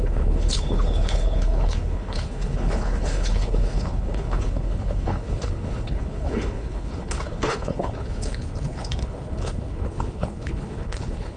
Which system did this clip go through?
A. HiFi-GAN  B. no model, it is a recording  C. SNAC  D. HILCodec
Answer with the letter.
D